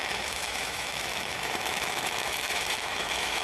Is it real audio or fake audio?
fake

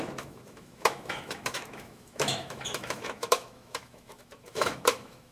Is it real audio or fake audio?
fake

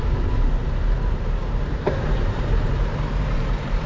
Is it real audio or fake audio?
fake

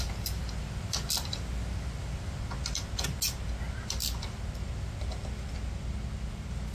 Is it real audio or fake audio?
real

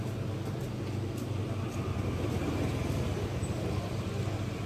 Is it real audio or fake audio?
real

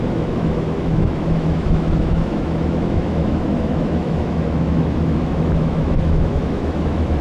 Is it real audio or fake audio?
fake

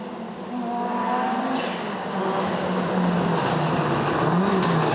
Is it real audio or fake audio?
real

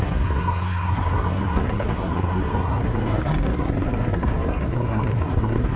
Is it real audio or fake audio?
fake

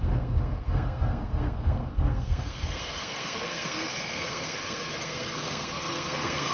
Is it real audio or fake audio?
fake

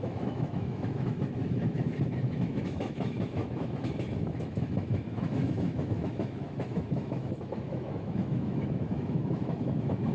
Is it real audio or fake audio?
fake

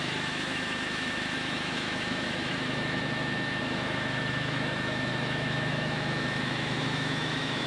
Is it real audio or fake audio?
fake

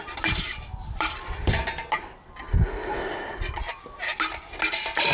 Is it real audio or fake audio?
real